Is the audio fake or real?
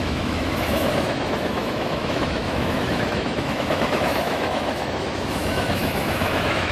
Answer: fake